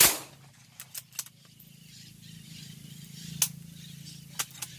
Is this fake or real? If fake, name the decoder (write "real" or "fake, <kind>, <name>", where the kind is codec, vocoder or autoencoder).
real